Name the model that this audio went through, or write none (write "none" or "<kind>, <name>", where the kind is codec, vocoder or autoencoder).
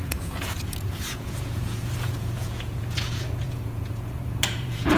vocoder, Vocos